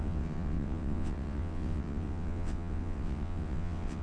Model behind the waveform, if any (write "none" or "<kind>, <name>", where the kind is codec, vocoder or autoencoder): vocoder, WaveNeXt